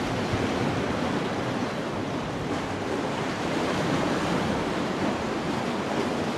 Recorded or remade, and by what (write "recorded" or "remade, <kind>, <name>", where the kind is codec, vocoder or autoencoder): remade, vocoder, BigVGAN v2